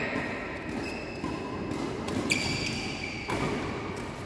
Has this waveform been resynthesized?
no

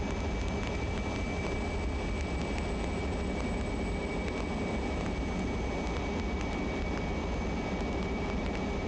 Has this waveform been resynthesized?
no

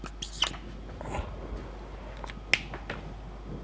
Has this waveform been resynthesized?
no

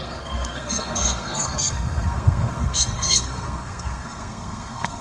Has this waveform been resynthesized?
yes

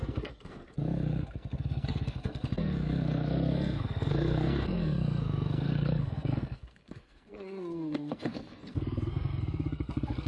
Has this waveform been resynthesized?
yes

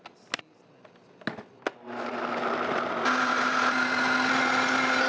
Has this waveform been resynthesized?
no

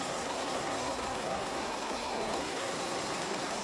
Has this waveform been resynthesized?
yes